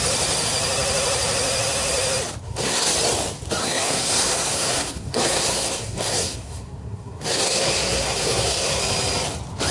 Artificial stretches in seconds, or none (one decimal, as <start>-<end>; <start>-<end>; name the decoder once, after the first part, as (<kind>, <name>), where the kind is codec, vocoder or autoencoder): 2.4-2.9 (codec, SNAC); 3.6-8.8